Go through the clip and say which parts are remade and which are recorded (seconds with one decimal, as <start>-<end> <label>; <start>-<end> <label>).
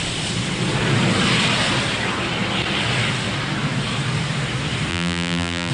0.0-4.9 recorded; 4.9-5.7 remade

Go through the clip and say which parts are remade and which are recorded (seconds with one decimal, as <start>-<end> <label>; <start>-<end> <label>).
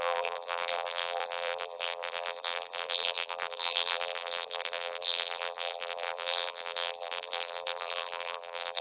0.0-8.8 remade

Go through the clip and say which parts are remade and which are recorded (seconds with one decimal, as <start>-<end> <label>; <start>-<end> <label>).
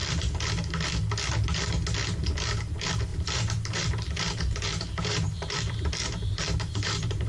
0.0-3.1 recorded; 3.1-7.3 remade